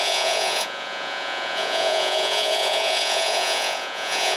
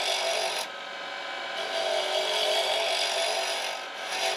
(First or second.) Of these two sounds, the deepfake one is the first